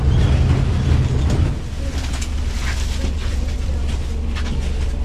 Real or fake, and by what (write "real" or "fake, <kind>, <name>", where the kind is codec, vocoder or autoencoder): real